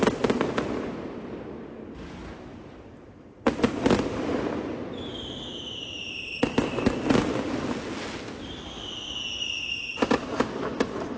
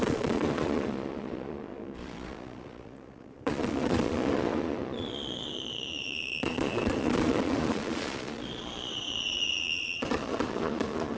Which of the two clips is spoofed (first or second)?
second